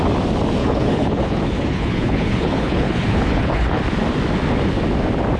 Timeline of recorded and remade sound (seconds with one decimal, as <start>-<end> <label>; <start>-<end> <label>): 0.0-0.6 recorded; 0.6-3.8 remade; 3.8-5.4 recorded